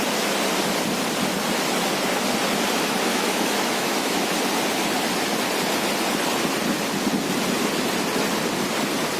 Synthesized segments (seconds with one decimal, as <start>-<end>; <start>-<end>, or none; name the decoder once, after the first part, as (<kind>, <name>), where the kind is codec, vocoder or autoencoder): 3.1-4.3 (autoencoder, DAC-VAE)